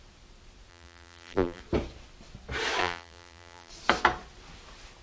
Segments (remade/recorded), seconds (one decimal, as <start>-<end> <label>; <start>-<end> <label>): 0.0-0.7 recorded; 0.7-1.6 remade; 1.6-2.8 recorded; 2.8-3.7 remade; 3.7-5.0 recorded